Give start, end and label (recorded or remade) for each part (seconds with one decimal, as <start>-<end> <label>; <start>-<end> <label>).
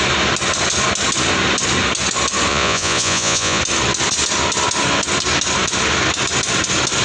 0.0-2.5 recorded; 2.5-3.6 remade; 3.6-7.0 recorded